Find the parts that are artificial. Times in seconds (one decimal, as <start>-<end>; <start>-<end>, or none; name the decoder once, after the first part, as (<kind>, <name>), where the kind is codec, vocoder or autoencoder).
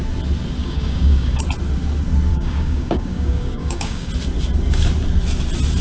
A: 0.6-1.4 (codec, DAC); 2.3-4.1